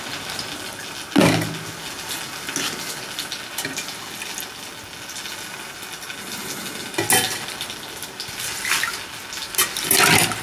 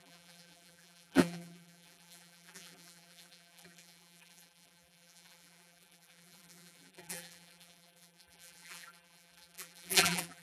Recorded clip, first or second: first